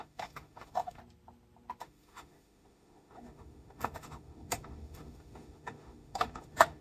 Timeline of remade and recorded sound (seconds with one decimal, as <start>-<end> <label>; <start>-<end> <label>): 0.0-1.0 remade; 1.0-1.8 recorded; 1.8-6.8 remade